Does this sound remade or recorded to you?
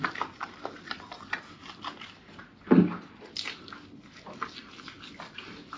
recorded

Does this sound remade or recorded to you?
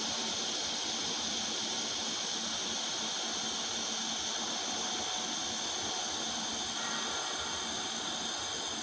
recorded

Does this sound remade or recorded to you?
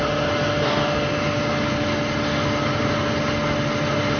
recorded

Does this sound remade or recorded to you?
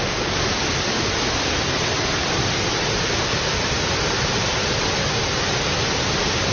recorded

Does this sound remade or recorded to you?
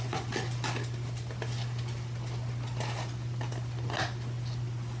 recorded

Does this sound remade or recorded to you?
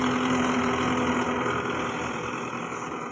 recorded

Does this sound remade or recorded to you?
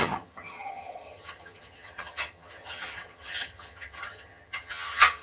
remade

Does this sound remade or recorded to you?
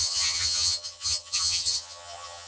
remade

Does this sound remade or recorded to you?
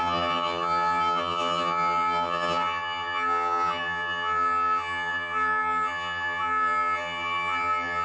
remade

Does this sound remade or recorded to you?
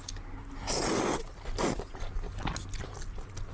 recorded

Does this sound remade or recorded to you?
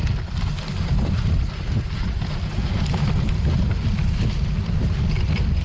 recorded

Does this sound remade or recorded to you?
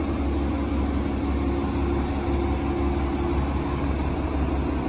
recorded